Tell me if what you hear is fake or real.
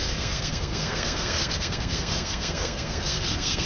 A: fake